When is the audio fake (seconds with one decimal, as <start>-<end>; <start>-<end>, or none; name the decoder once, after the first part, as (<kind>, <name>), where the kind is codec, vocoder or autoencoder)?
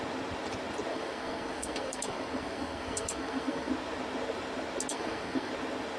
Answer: 0.9-3.7 (codec, SNAC); 4.9-5.5